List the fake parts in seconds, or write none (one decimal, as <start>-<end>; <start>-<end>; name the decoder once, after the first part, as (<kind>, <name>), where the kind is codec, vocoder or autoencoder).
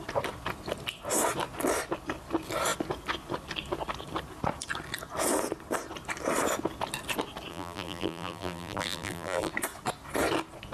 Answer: 7.5-9.5 (vocoder, BigVGAN v2)